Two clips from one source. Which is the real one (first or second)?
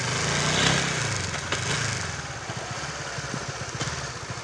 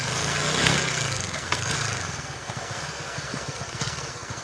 first